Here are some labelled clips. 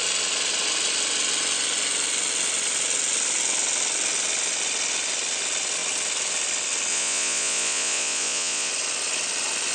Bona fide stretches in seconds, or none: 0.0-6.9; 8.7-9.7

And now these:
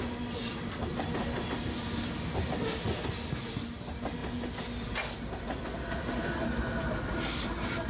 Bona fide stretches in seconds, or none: 0.0-7.9

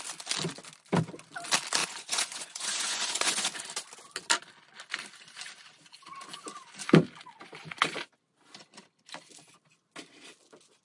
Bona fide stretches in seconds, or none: 0.0-1.8; 3.6-10.8

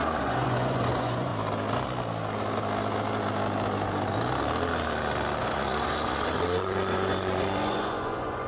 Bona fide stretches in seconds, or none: 1.3-5.4